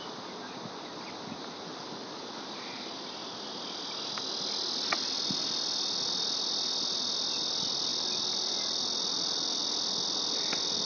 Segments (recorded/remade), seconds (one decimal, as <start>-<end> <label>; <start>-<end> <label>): 0.0-10.9 recorded